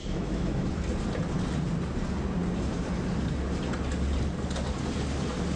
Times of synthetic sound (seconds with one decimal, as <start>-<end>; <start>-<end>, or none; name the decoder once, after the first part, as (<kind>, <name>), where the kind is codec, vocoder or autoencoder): 0.0-0.7 (autoencoder, DAC-VAE)